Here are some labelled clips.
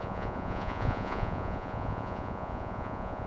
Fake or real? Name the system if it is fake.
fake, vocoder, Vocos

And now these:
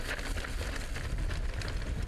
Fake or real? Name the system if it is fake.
real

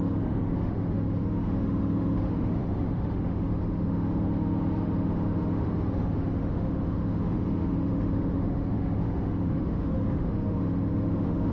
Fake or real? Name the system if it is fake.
fake, autoencoder, DAC-VAE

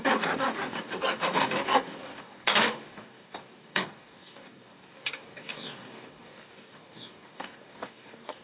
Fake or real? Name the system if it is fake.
fake, codec, DAC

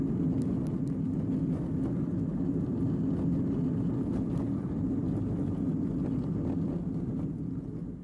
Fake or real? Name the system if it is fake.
real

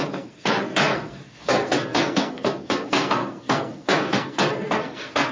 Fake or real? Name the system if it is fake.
fake, codec, SNAC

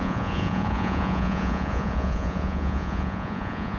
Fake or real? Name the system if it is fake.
fake, vocoder, Vocos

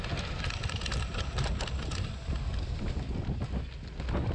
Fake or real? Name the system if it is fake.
real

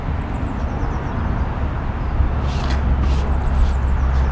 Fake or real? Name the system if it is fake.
real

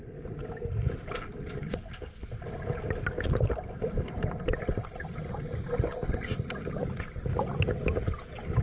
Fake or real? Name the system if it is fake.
real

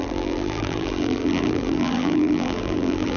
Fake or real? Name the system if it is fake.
fake, vocoder, BigVGAN v2